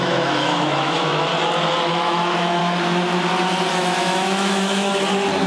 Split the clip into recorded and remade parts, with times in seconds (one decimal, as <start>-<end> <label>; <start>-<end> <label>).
0.0-1.3 remade; 1.3-1.9 recorded; 1.9-2.6 remade; 2.6-3.7 recorded; 3.7-4.9 remade; 4.9-5.5 recorded